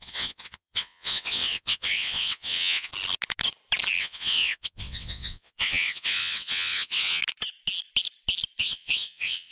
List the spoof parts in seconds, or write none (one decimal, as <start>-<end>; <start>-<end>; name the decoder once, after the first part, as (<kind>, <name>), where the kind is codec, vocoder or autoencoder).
0.0-2.9 (vocoder, WaveNeXt); 4.0-7.2; 8.6-9.5